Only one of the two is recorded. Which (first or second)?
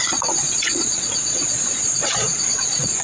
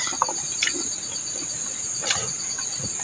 second